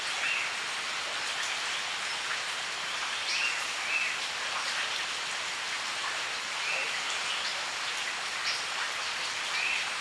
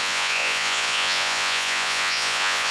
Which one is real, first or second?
first